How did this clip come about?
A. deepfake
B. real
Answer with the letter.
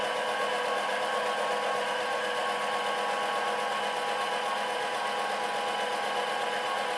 B